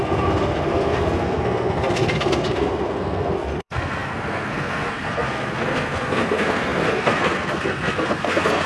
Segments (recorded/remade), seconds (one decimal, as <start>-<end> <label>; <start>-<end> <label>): 0.0-8.7 remade